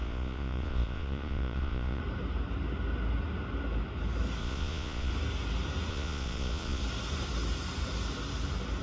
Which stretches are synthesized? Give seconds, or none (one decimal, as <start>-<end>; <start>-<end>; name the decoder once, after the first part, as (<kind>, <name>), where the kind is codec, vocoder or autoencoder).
0.0-2.0 (vocoder, Vocos); 4.4-5.1; 5.9-6.8

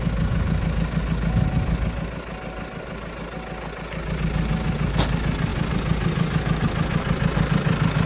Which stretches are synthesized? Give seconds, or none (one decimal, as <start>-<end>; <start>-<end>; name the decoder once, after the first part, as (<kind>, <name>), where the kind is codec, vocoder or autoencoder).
none

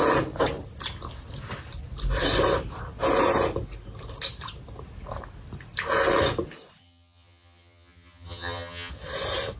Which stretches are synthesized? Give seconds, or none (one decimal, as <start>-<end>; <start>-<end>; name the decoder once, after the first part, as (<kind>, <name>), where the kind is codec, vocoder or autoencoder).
6.8-8.9 (vocoder, HiFi-GAN)

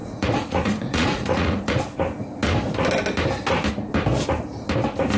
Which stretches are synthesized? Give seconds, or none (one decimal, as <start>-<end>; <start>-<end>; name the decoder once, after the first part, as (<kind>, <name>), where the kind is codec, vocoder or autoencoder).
0.0-1.8 (vocoder, Vocos)

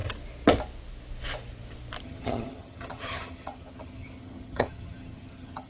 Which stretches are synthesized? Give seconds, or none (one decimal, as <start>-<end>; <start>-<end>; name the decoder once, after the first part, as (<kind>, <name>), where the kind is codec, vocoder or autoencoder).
2.0-5.7 (vocoder, HiFi-GAN)